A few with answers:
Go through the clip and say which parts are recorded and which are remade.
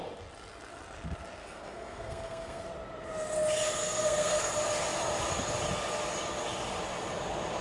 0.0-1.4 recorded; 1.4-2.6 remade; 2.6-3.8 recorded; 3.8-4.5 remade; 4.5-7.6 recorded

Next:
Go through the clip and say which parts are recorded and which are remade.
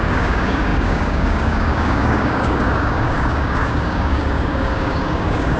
0.0-5.6 remade